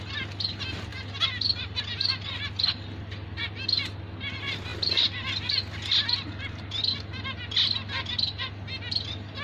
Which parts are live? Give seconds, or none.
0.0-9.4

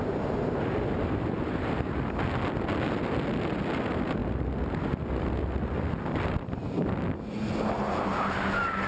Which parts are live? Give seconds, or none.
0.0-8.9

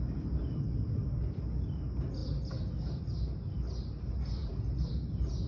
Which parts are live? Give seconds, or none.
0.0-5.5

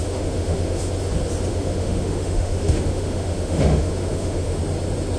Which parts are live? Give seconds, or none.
0.9-1.5; 4.6-5.2

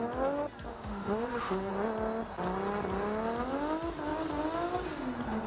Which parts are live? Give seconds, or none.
0.0-0.7; 1.7-5.5